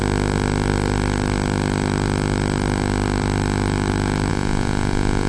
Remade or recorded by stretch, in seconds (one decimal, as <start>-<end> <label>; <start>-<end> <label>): 0.0-4.3 recorded; 4.3-5.3 remade